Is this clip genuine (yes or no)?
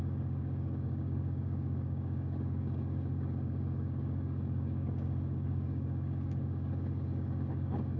no